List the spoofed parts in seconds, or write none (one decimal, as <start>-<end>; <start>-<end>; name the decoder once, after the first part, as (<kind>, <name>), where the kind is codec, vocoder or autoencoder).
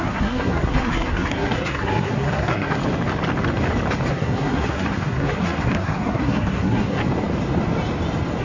0.0-2.8 (codec, SNAC); 4.1-7.0